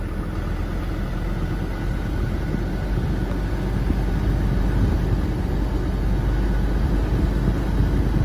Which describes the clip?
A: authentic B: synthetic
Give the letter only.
A